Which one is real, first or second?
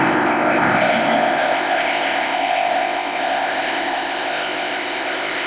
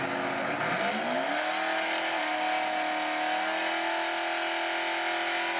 second